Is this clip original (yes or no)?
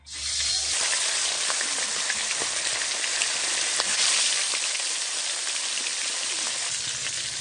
yes